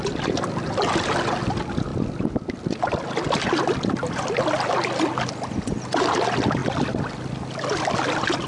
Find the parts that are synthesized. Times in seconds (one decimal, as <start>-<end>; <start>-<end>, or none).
none